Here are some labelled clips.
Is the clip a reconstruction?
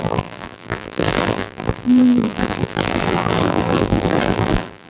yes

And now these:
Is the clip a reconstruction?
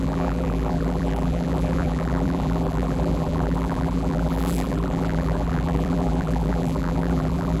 yes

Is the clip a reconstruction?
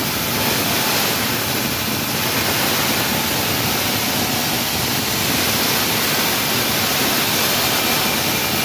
no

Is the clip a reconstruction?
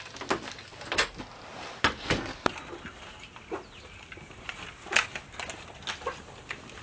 no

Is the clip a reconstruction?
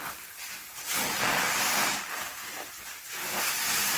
no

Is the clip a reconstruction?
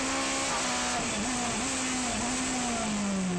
no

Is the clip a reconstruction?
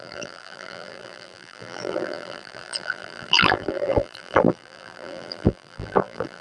yes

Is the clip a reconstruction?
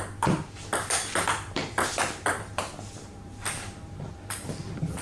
yes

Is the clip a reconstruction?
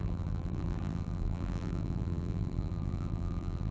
yes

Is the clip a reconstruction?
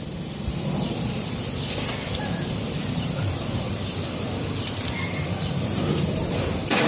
yes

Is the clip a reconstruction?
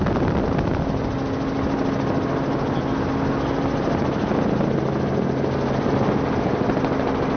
no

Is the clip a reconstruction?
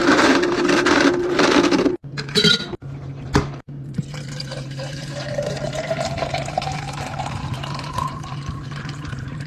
yes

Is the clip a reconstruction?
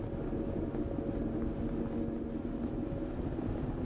no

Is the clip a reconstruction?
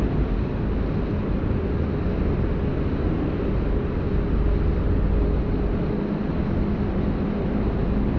no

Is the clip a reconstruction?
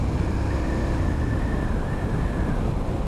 no